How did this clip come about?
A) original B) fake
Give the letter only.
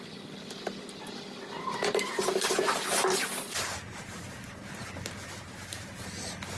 A